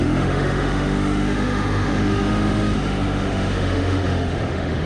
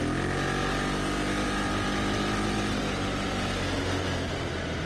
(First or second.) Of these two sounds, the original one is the second